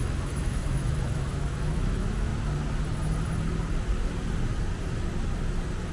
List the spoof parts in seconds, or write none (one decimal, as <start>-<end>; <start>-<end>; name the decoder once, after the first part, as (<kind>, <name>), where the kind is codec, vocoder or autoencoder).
0.0-2.3 (autoencoder, DAC-VAE)